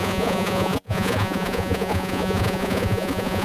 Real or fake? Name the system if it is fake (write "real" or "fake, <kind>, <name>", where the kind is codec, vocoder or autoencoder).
fake, vocoder, Vocos